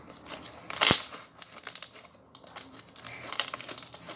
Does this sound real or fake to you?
real